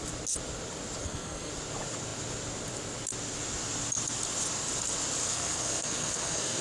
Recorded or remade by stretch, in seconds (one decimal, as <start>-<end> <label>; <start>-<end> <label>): 0.0-1.0 recorded; 1.0-1.5 remade; 1.5-5.2 recorded; 5.2-6.6 remade